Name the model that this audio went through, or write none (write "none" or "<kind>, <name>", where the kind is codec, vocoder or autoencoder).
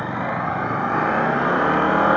none